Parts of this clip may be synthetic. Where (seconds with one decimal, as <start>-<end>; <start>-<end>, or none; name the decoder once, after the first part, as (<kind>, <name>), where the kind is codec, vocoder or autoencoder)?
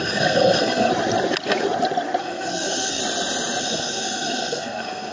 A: 0.0-0.9 (codec, SNAC); 2.2-3.0; 3.6-5.1